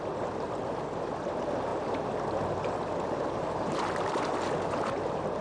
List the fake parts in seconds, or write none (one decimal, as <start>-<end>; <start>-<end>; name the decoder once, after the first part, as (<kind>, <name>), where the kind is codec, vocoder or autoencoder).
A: none